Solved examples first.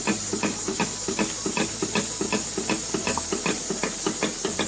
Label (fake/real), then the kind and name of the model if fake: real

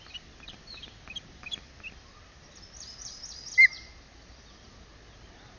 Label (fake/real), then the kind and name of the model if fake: real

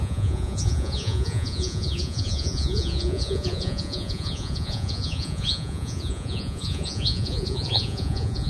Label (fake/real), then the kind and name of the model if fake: fake, vocoder, Vocos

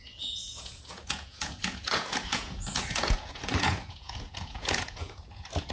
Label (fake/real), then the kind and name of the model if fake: fake, vocoder, Vocos